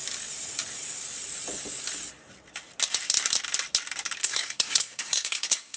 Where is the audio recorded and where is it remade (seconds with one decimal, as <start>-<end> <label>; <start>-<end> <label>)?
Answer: 0.0-4.2 recorded; 4.2-5.8 remade